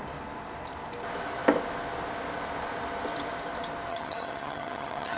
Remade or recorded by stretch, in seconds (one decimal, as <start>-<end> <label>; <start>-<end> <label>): 0.0-3.9 recorded; 3.9-5.2 remade

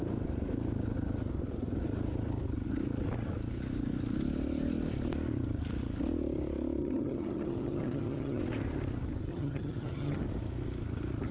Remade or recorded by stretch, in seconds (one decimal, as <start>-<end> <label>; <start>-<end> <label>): 0.0-6.8 recorded; 6.8-8.4 remade; 8.4-9.3 recorded; 9.3-10.2 remade; 10.2-11.3 recorded

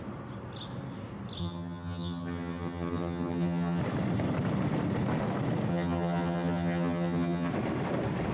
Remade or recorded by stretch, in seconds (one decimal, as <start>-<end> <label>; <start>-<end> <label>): 0.0-1.4 recorded; 1.4-3.8 remade; 3.8-5.7 recorded; 5.7-7.5 remade; 7.5-8.3 recorded